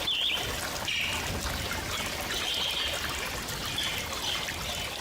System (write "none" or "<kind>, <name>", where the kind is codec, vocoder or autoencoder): none